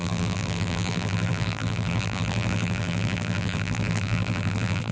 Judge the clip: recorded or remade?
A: remade